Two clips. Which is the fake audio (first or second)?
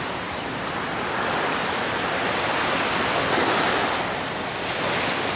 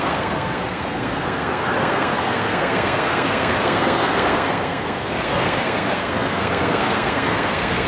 second